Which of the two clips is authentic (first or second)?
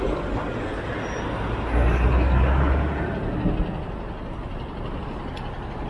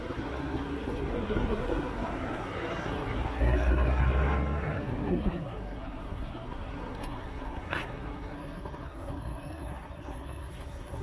first